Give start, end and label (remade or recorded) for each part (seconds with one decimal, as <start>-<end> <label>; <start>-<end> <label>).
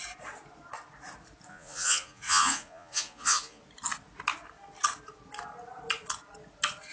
0.0-1.5 recorded; 1.5-3.6 remade; 3.6-6.9 recorded